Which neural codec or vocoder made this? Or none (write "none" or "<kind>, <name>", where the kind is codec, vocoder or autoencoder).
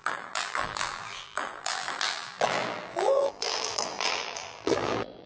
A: vocoder, BigVGAN v2